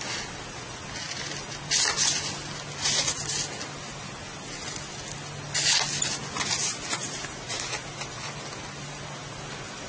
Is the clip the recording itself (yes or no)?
yes